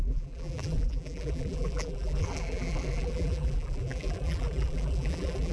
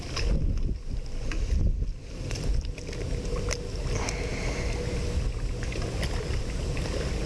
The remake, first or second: first